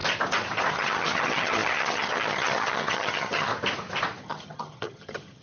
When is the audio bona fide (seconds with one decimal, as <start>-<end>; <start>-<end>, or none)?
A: 0.0-0.7; 3.5-4.2